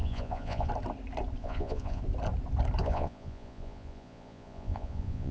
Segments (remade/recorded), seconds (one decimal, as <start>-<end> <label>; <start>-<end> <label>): 0.0-0.7 remade; 0.7-1.4 recorded; 1.4-2.0 remade; 2.0-2.8 recorded; 2.8-5.3 remade